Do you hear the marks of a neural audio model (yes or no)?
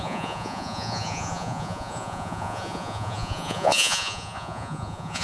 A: yes